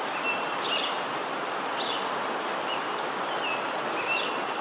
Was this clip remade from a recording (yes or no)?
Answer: no